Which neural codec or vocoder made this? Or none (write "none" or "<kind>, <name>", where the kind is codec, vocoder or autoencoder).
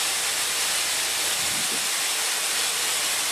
none